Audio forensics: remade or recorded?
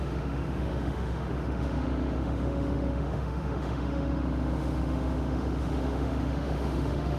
remade